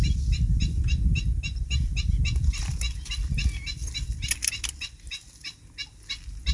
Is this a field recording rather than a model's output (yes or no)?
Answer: yes